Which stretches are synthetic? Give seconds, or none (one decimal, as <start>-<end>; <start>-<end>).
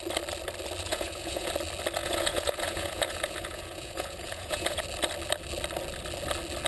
0.9-1.5; 2.0-4.8